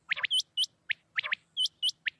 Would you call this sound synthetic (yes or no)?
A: no